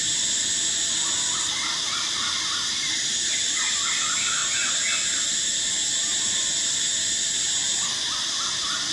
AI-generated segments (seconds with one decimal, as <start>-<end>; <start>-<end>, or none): none